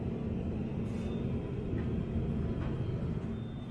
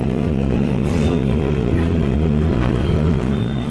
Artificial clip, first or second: second